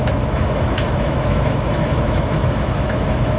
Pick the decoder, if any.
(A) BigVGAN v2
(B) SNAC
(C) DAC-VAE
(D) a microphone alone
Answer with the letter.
C